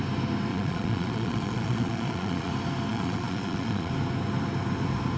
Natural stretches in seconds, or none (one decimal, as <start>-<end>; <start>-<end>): 0.0-0.5; 2.5-2.9; 3.9-5.2